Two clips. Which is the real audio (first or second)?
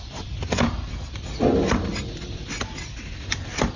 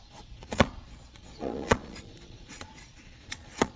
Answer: first